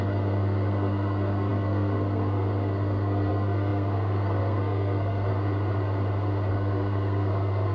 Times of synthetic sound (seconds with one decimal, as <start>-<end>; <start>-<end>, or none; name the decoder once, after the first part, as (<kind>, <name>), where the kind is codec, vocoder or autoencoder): 0.0-5.3 (codec, SNAC); 6.5-7.7